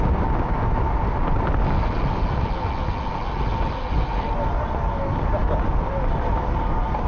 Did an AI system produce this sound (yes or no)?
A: no